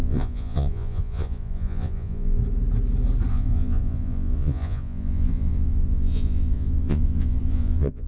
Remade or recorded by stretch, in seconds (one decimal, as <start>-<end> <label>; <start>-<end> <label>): 0.0-2.4 remade; 2.4-3.3 recorded; 3.3-8.1 remade